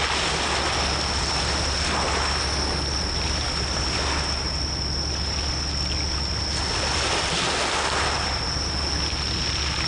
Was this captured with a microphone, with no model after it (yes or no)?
yes